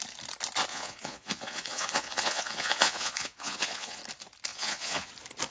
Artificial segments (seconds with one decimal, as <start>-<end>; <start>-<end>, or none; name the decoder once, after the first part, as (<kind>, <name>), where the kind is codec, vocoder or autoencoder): 0.7-4.0 (vocoder, Vocos); 4.5-5.1